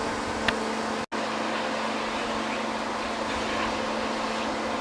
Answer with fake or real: real